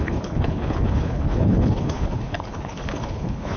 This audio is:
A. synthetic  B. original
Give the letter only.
A